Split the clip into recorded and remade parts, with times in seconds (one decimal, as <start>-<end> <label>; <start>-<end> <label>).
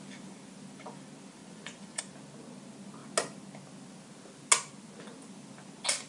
0.0-1.4 recorded; 1.4-2.0 remade; 2.0-6.1 recorded